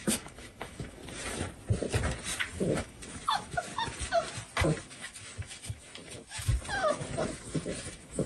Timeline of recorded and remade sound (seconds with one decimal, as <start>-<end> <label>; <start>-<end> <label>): 0.0-1.0 remade; 1.0-2.4 recorded; 2.4-3.7 remade; 3.7-4.8 recorded; 4.8-6.5 remade; 6.5-7.2 recorded; 7.2-8.3 remade